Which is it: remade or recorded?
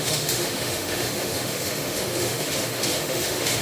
remade